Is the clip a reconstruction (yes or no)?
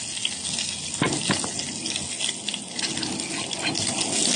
no